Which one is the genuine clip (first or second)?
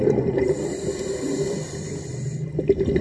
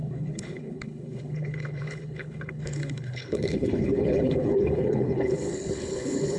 first